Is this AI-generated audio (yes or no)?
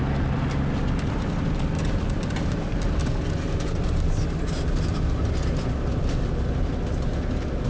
no